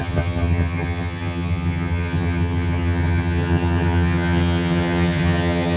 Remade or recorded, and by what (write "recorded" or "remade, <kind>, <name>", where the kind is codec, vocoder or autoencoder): remade, vocoder, HiFi-GAN